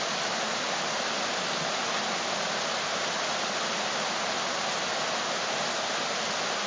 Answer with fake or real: real